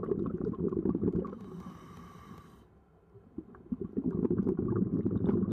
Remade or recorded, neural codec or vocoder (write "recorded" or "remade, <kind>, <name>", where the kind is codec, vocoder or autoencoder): recorded